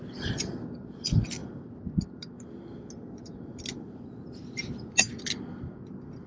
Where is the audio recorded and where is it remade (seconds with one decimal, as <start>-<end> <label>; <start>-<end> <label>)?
0.0-6.3 recorded